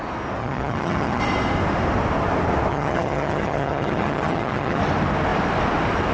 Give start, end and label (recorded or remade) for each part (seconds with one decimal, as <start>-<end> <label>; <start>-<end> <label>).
0.0-0.4 recorded; 0.4-1.2 remade; 1.2-2.7 recorded; 2.7-4.8 remade; 4.8-6.1 recorded